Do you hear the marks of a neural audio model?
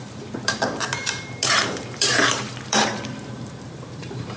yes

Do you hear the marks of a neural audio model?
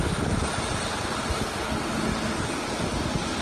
no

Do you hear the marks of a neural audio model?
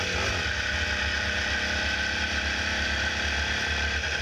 no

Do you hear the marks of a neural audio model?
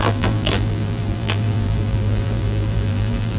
yes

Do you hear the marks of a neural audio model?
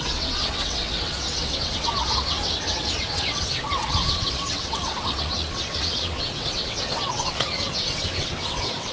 yes